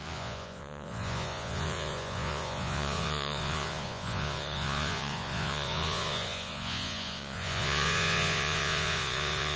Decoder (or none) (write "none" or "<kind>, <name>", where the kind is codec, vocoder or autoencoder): vocoder, Vocos